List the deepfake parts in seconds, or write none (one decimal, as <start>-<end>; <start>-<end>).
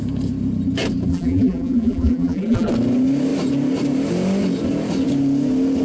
1.1-2.7